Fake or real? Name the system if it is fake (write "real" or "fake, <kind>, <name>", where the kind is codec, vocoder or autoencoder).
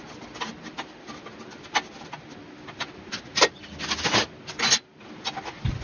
real